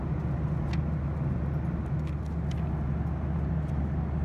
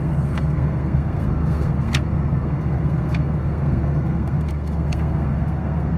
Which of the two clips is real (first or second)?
first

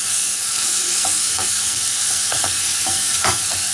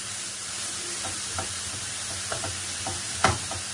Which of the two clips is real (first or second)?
second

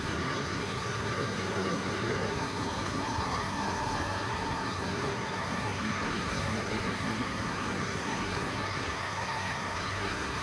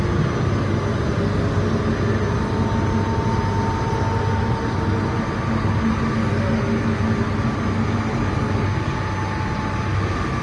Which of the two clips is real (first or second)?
second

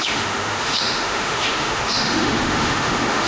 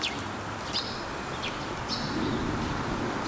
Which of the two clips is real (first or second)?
second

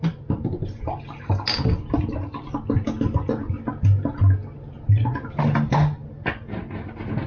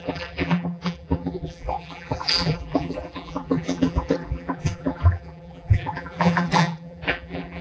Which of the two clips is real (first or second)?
first